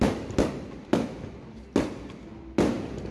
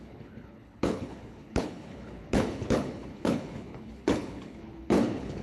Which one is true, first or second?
first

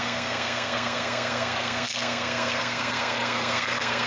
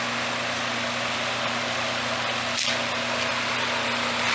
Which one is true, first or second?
second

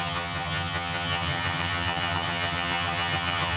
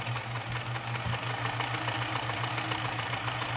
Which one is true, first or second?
second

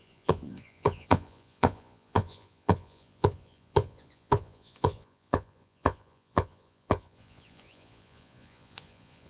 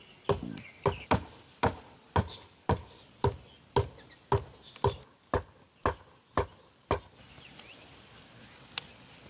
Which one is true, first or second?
second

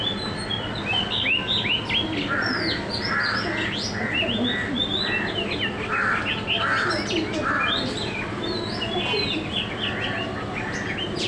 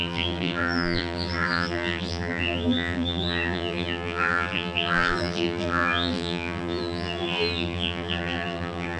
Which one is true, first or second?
first